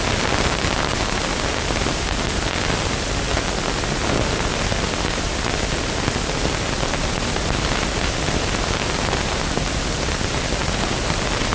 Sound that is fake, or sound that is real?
real